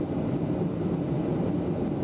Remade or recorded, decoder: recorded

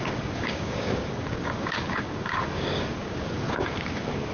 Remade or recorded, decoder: remade, codec, DAC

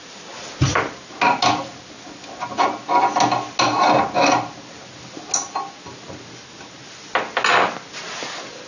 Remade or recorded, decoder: recorded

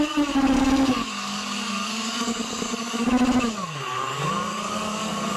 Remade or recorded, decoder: remade, codec, DAC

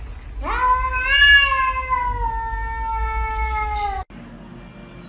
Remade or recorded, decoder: recorded